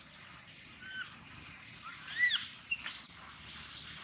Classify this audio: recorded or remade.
recorded